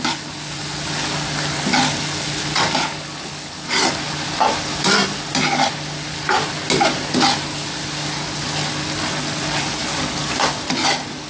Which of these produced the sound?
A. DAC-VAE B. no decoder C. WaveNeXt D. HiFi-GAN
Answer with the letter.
B